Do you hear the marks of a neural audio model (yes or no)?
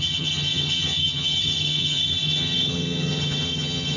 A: yes